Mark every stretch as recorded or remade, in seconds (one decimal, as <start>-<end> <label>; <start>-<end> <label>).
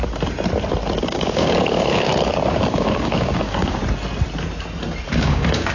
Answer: 0.0-1.0 recorded; 1.0-2.1 remade; 2.1-2.7 recorded; 2.7-3.8 remade; 3.8-5.2 recorded; 5.2-5.7 remade